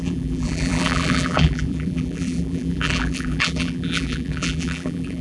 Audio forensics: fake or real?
fake